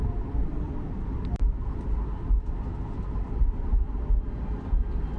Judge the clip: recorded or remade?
recorded